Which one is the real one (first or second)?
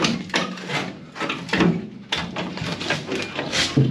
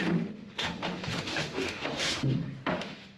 first